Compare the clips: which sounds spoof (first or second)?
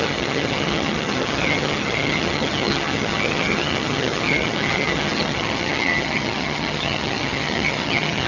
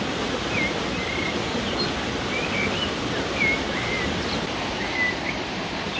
first